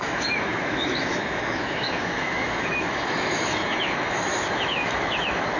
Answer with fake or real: fake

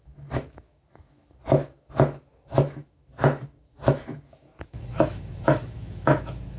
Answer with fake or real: fake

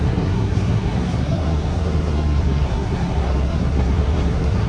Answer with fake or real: fake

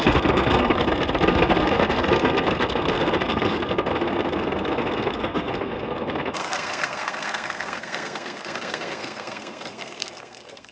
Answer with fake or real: fake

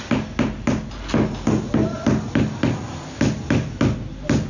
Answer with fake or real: real